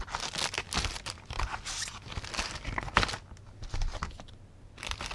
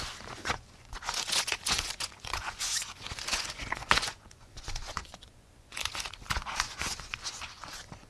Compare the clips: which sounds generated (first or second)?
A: second